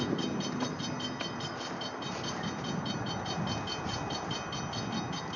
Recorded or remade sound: recorded